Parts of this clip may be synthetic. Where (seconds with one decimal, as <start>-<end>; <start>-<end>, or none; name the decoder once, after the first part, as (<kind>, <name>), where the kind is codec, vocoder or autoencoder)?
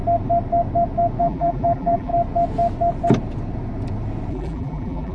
1.2-2.1 (vocoder, BigVGAN v2); 4.3-5.1